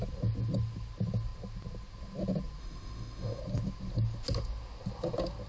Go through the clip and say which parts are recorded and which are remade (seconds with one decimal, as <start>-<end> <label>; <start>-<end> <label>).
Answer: 0.0-2.6 recorded; 2.6-3.4 remade; 3.4-5.5 recorded